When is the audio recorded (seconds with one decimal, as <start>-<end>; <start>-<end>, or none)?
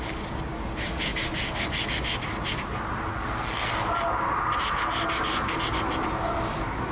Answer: 0.0-3.1; 3.7-6.9